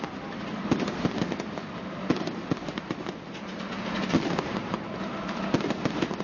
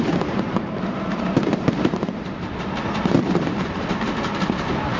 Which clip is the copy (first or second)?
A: second